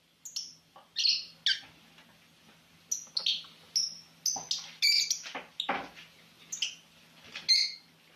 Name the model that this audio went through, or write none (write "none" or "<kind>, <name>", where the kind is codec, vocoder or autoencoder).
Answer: none